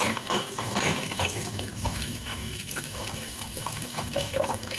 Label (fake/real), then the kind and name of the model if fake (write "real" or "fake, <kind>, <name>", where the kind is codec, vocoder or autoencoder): fake, codec, DAC